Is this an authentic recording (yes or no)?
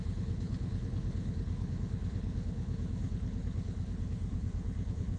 no